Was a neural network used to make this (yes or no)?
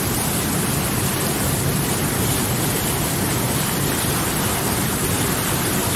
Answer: no